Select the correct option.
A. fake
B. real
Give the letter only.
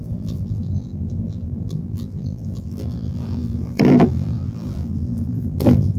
A